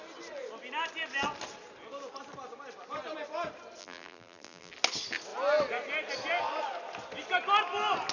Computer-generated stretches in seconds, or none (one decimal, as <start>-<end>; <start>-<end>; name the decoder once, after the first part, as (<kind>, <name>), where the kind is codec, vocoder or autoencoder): 3.8-4.7 (vocoder, BigVGAN v2)